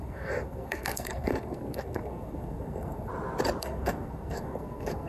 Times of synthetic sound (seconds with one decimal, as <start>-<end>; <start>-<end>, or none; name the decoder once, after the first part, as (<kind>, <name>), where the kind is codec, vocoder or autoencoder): 0.0-3.1 (codec, SNAC); 3.6-5.1